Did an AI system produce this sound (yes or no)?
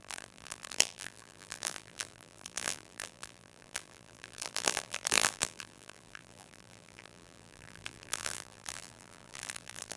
yes